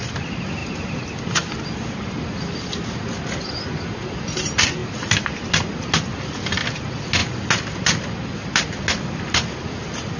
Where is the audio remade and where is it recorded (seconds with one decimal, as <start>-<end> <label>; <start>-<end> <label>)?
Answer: 0.0-10.2 recorded